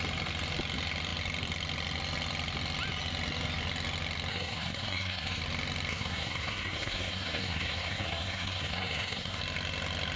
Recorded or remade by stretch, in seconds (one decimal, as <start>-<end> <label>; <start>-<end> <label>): 0.0-4.3 recorded; 4.3-5.4 remade; 5.4-5.9 recorded; 5.9-9.4 remade; 9.4-10.2 recorded